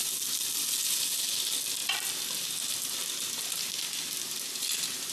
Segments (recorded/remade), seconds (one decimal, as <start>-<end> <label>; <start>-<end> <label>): 0.0-5.1 recorded